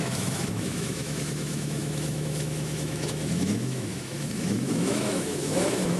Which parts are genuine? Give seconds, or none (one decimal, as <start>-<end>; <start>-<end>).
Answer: none